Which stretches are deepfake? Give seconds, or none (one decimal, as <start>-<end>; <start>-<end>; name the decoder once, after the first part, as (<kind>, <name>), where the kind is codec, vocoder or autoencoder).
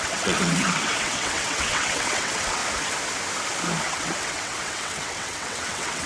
0.0-2.6 (vocoder, WaveNeXt); 3.9-6.1